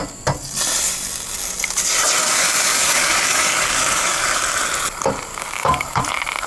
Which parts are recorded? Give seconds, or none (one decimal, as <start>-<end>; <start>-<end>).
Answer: 0.0-2.2; 4.4-5.3; 6.0-6.5